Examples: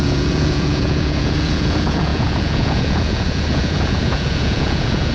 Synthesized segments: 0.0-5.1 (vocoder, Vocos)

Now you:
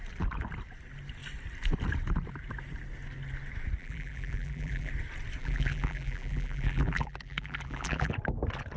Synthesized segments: 3.8-4.9 (vocoder, BigVGAN v2); 5.4-8.1

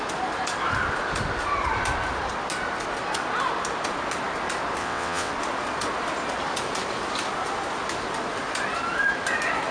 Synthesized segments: 4.8-5.3 (vocoder, WaveNeXt)